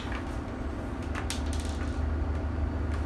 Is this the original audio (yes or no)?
yes